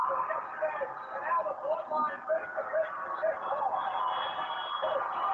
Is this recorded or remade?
recorded